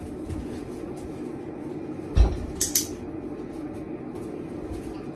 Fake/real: real